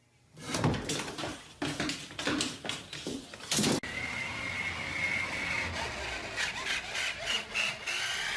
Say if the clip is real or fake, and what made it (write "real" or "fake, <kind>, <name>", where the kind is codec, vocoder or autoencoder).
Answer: real